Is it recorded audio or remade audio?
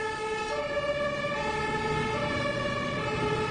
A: recorded